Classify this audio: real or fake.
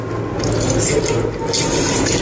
real